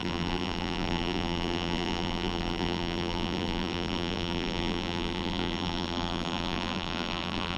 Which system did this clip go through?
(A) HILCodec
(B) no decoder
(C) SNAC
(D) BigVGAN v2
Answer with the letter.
D